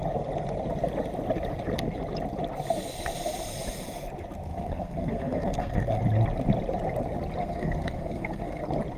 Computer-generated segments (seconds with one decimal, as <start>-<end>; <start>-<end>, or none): 4.5-6.0; 7.4-8.6